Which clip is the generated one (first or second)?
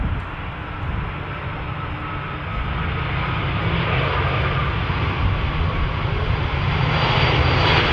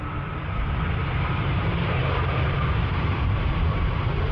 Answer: second